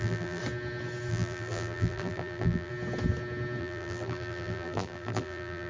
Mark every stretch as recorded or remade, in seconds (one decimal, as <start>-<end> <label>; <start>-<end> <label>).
0.0-0.4 remade; 0.4-1.1 recorded; 1.1-2.7 remade; 2.7-3.6 recorded; 3.6-5.7 remade